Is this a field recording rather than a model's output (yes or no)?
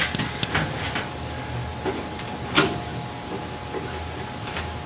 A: yes